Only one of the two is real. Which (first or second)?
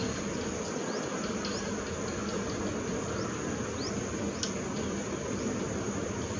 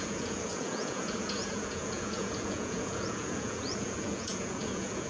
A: first